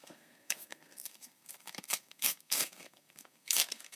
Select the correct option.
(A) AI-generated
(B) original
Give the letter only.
A